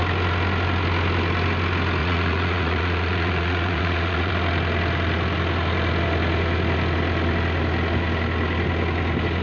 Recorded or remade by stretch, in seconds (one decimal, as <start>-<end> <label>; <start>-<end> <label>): 0.0-2.0 recorded; 2.0-4.3 remade; 4.3-9.4 recorded